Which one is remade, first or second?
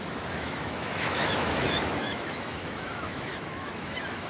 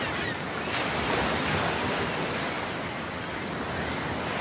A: first